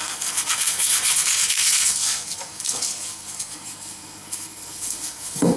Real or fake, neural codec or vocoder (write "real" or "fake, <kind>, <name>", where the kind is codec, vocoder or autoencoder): fake, codec, SNAC